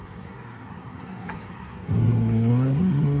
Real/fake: fake